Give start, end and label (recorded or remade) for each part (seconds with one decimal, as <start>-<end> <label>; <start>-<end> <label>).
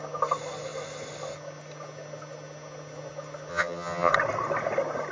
0.0-3.5 recorded; 3.5-4.1 remade; 4.1-5.1 recorded